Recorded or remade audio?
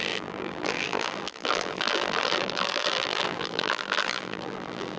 remade